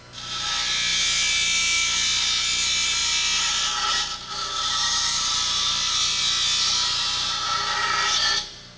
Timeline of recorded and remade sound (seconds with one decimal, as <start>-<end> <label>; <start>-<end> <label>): 0.0-3.0 recorded; 3.0-6.2 remade; 6.2-8.8 recorded